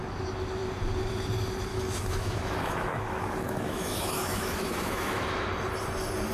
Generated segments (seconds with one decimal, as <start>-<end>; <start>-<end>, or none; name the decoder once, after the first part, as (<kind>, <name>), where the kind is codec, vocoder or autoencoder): 1.7-5.5 (autoencoder, DAC-VAE)

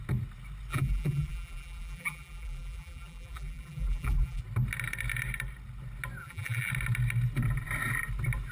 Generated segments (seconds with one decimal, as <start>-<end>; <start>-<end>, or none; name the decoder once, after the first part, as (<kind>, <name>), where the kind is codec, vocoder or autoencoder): 0.7-4.4 (vocoder, BigVGAN v2); 6.2-6.7